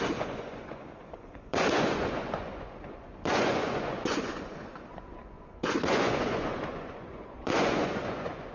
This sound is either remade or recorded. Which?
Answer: remade